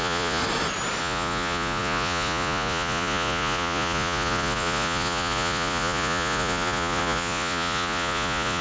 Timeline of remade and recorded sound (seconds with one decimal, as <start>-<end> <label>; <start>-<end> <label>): 0.0-0.4 remade; 0.4-1.0 recorded; 1.0-8.6 remade